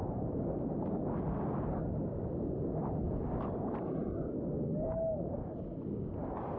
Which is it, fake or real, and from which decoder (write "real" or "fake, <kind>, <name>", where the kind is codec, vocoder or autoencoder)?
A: real